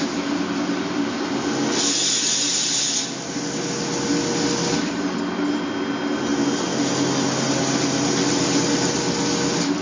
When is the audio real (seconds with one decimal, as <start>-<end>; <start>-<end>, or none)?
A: 0.0-9.8